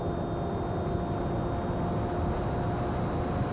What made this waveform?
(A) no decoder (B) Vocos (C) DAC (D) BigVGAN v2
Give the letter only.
A